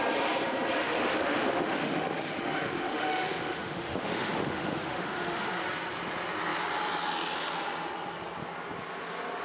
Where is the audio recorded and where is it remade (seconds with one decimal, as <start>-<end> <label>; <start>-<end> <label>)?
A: 0.0-0.8 recorded; 0.8-5.6 remade; 5.6-9.4 recorded